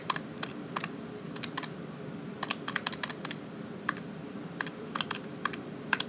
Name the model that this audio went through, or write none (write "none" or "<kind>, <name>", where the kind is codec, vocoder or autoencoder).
vocoder, BigVGAN v2